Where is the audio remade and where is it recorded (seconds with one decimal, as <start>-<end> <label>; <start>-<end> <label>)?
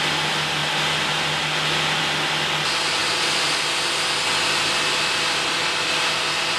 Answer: 0.0-6.6 recorded